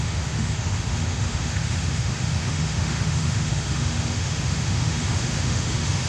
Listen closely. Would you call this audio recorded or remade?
remade